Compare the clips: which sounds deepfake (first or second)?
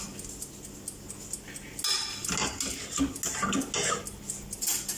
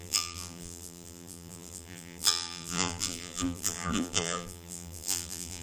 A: second